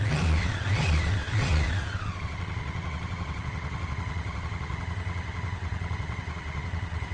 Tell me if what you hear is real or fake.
fake